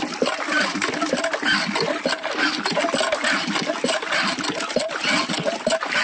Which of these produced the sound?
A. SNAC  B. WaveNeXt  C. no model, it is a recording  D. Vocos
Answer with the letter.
C